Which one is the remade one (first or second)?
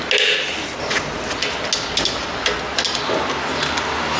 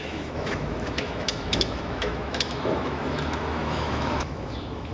second